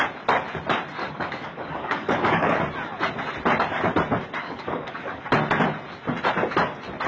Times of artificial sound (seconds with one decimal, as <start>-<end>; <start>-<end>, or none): 1.0-2.6; 4.4-5.2